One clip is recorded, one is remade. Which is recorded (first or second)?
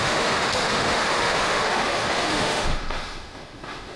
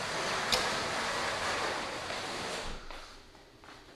second